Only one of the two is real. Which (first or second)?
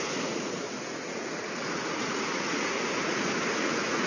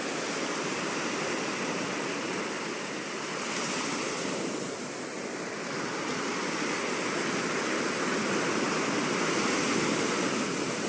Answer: second